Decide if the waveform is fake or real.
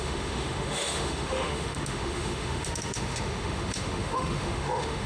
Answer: fake